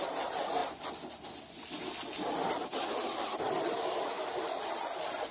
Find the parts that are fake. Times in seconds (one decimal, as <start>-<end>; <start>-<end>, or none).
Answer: none